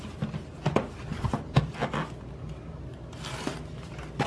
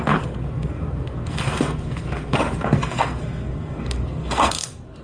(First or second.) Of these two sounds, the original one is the first